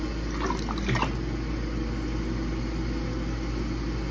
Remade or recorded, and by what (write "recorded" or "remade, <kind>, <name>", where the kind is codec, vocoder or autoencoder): recorded